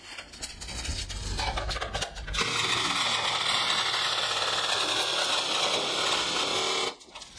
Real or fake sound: real